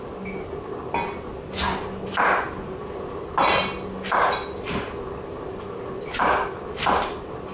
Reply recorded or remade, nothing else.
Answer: recorded